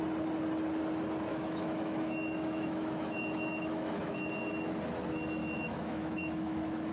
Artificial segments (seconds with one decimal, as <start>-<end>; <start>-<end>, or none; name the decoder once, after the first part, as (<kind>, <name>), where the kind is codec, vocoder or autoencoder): 1.3-4.5 (autoencoder, DAC-VAE); 5.4-6.9